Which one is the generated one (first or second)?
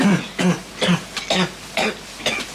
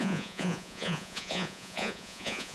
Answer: second